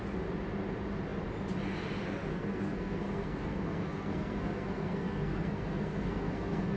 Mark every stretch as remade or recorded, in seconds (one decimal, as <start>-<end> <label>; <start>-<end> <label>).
0.0-2.3 recorded; 2.3-6.8 remade